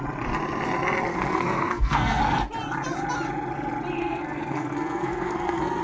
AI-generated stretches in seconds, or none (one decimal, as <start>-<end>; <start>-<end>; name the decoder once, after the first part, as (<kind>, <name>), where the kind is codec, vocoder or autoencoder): 1.1-2.2 (codec, SNAC); 4.0-5.8

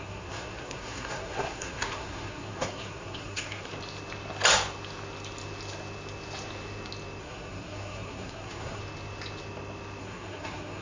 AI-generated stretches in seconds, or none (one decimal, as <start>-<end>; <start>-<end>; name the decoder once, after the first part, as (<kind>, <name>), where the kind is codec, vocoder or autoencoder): 0.0-3.7 (codec, SNAC); 7.2-8.8; 10.0-10.8

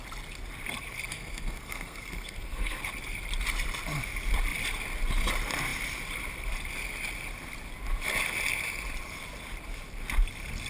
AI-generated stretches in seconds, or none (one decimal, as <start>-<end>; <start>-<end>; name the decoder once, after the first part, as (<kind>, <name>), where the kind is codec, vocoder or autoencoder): 1.1-2.8 (codec, SNAC)

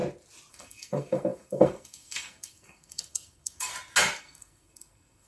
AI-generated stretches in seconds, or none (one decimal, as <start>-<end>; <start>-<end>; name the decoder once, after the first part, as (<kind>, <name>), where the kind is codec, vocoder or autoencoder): 0.5-3.7 (codec, SNAC); 4.2-5.3

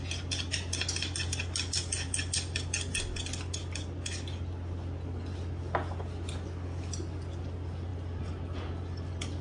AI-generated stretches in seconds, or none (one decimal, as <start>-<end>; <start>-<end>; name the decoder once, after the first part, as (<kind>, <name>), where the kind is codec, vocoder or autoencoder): none

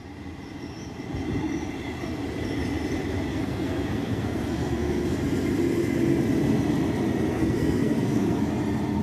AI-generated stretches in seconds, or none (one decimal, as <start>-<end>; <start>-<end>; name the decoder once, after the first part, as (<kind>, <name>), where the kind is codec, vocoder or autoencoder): 3.3-5.2 (codec, SNAC); 7.3-8.5

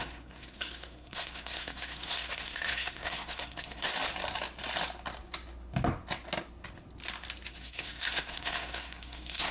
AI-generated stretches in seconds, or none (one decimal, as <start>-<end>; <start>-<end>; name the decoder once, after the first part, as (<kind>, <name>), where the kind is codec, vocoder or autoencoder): 0.0-3.9 (codec, SNAC); 7.5-9.5